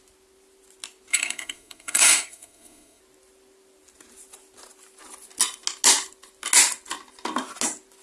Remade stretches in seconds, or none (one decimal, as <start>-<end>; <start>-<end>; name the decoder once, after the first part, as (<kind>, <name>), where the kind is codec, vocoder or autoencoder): 1.1-3.0 (codec, SNAC)